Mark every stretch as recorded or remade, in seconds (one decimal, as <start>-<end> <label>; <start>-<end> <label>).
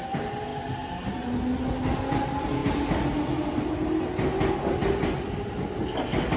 0.0-6.4 recorded